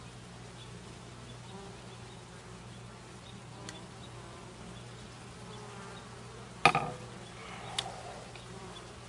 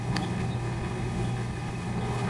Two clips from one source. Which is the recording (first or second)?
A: first